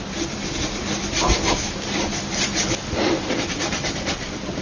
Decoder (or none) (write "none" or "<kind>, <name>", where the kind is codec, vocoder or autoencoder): none